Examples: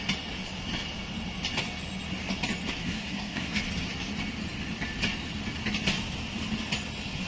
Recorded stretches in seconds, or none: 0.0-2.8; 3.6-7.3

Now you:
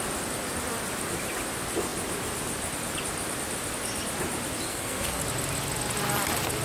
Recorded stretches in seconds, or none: 0.0-4.7; 5.2-6.6

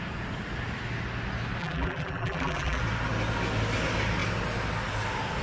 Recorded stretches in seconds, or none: 0.0-1.6; 2.8-5.4